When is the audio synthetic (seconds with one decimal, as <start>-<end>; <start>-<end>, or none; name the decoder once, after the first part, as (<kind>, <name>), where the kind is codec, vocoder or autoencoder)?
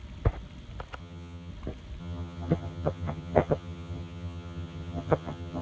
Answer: 1.0-1.5 (vocoder, HiFi-GAN); 2.0-5.6